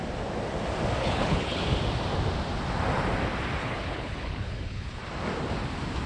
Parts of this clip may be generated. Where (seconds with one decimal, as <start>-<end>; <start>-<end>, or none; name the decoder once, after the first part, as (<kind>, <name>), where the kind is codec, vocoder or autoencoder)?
1.0-1.6 (codec, HILCodec); 3.6-5.0